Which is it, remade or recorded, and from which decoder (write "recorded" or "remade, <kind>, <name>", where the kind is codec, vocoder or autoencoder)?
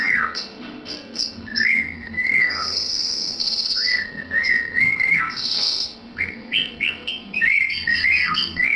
remade, codec, SNAC